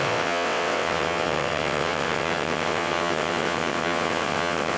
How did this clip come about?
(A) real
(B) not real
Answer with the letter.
B